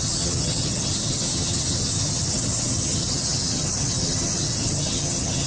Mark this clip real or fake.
fake